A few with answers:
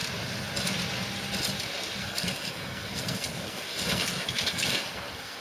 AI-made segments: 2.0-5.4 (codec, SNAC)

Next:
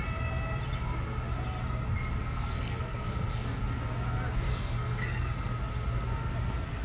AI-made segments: 2.2-3.6 (codec, SNAC); 4.5-5.5

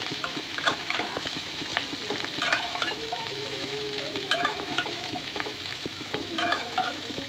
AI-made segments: 0.0-1.7 (autoencoder, DAC-VAE); 2.5-7.3

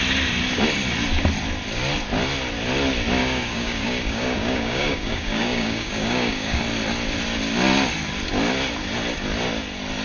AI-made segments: 3.2-6.6 (codec, DAC)

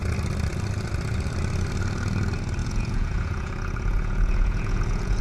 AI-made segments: 2.6-5.2 (vocoder, Vocos)

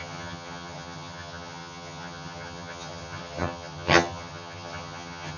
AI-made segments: 0.0-5.4 (vocoder, HiFi-GAN)